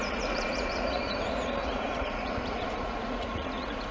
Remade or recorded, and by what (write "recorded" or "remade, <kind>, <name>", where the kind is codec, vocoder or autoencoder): remade, vocoder, Vocos